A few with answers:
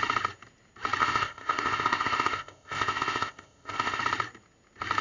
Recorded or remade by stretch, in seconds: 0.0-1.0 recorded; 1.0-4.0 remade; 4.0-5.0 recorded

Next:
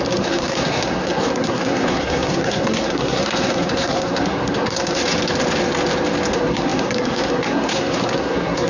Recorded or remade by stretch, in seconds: 0.0-5.0 remade; 5.0-6.3 recorded; 6.3-8.7 remade

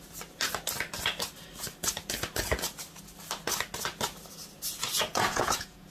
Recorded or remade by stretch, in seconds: 0.0-5.1 recorded; 5.1-5.9 remade

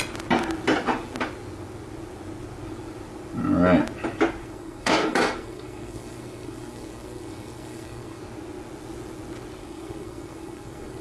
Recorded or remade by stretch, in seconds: 0.0-4.4 recorded; 4.4-8.2 remade; 8.2-9.6 recorded; 9.6-11.0 remade

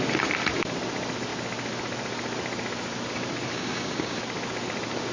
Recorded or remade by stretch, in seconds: 0.0-3.5 recorded; 3.5-4.2 remade; 4.2-5.1 recorded

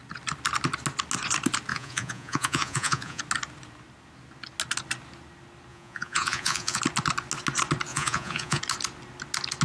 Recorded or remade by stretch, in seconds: 0.0-1.7 recorded; 1.7-3.2 remade; 3.2-5.7 recorded; 5.7-6.8 remade; 6.8-7.9 recorded; 7.9-8.6 remade; 8.6-9.6 recorded

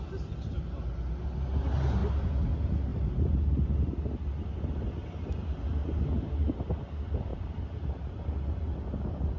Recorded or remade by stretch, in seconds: 0.0-2.9 recorded; 2.9-3.4 remade; 3.4-7.3 recorded; 7.3-8.2 remade; 8.2-9.4 recorded

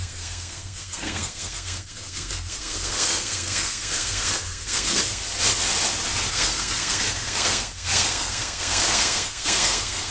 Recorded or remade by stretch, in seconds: 0.0-5.2 remade; 5.2-6.3 recorded; 6.3-10.1 remade